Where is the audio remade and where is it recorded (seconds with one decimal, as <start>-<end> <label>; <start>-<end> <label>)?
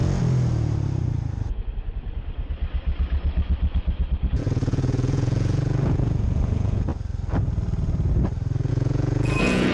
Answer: 0.0-4.4 recorded; 4.4-6.9 remade; 6.9-8.7 recorded; 8.7-9.7 remade